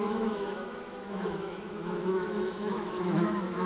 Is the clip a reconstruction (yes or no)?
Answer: yes